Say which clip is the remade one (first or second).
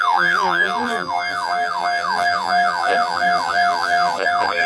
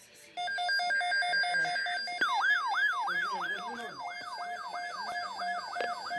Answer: first